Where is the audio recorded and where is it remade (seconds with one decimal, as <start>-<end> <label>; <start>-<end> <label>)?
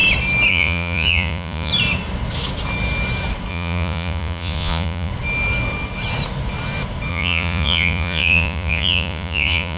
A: 0.0-0.5 recorded; 0.5-1.7 remade; 1.7-3.5 recorded; 3.5-5.1 remade; 5.1-7.1 recorded; 7.1-9.8 remade